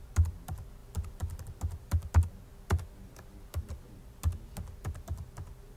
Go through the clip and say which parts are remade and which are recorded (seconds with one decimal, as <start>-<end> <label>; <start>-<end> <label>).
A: 0.0-5.8 recorded